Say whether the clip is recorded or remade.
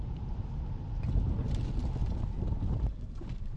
recorded